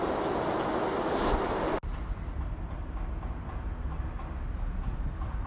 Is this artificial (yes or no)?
no